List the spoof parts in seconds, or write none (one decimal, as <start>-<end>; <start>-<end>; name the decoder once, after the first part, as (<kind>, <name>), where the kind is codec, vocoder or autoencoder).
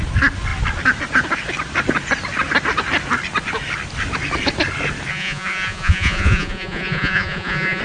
5.1-7.8 (vocoder, Vocos)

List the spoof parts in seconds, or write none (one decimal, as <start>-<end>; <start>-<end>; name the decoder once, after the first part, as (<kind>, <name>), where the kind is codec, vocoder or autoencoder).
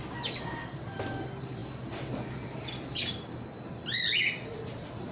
none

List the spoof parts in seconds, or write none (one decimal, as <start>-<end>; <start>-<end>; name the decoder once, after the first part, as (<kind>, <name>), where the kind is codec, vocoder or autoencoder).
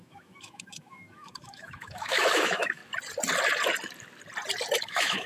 0.0-2.8 (autoencoder, DAC-VAE); 4.8-5.3